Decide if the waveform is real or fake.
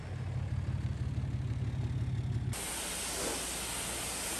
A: real